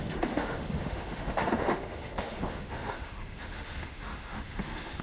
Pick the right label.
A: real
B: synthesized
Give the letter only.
B